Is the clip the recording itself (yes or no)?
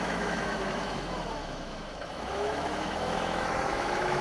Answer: no